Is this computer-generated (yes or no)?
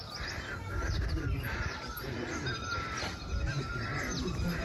no